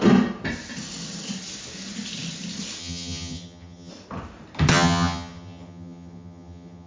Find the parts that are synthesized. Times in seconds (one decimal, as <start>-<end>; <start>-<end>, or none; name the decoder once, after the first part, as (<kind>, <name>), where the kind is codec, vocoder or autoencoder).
2.8-3.9 (vocoder, HiFi-GAN); 4.7-6.9